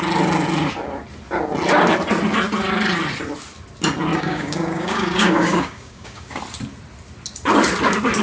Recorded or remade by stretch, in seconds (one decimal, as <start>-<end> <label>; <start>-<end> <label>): 0.0-4.1 recorded; 4.1-6.4 remade; 6.4-8.2 recorded